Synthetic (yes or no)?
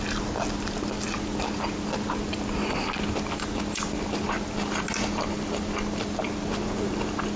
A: no